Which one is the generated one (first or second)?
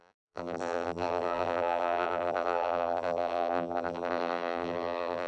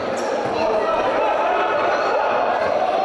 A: first